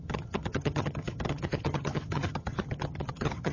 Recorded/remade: remade